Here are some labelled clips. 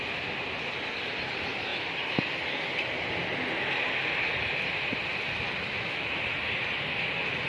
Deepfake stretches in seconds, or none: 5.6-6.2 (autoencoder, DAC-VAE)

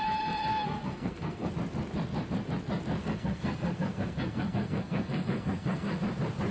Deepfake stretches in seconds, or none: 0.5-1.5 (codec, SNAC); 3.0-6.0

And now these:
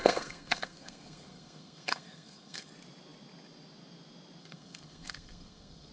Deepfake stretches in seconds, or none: 0.0-2.7 (codec, SNAC); 4.4-5.9

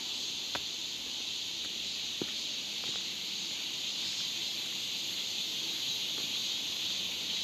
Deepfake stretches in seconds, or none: 0.8-2.3 (vocoder, BigVGAN v2); 4.5-5.9; 6.4-7.0